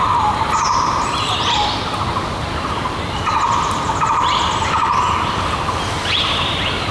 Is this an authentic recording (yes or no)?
yes